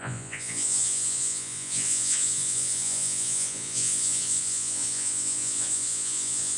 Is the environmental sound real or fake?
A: fake